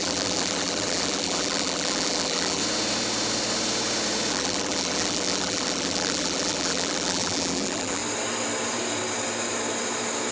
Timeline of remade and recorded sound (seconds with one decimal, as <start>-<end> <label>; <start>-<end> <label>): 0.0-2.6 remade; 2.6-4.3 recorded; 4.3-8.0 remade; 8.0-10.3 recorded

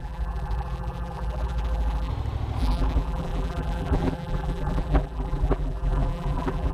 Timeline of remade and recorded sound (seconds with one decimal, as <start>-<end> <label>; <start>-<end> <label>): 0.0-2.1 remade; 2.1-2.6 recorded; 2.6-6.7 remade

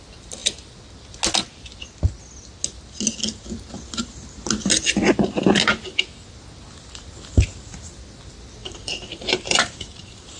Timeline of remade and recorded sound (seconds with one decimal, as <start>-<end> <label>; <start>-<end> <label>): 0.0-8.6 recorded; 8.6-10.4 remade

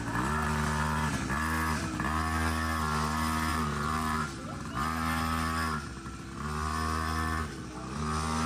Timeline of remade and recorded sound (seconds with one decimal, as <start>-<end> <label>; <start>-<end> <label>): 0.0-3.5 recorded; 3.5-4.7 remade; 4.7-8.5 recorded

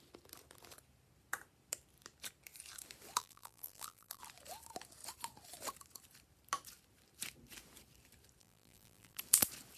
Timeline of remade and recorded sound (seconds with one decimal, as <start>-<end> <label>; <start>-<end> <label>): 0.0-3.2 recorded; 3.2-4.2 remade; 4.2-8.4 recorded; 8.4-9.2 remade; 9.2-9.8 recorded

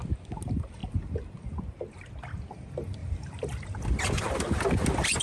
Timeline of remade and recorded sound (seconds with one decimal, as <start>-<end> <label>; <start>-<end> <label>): 0.0-5.2 recorded

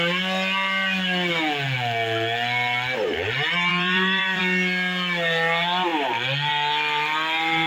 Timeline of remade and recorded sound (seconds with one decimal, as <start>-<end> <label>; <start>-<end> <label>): 0.0-3.7 recorded; 3.7-4.4 remade; 4.4-7.7 recorded